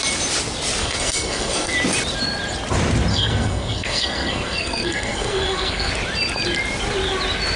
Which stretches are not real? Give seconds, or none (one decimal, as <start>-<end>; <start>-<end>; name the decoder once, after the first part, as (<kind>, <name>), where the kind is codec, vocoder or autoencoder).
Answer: 0.8-1.7 (codec, SNAC); 3.1-5.9